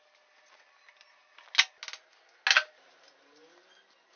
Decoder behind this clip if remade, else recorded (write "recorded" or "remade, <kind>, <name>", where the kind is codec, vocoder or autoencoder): recorded